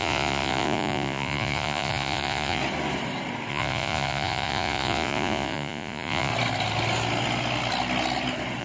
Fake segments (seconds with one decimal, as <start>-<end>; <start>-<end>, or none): 0.0-2.6; 3.5-6.3